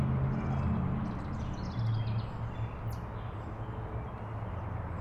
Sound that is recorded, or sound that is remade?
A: recorded